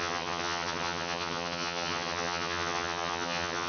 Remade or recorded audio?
remade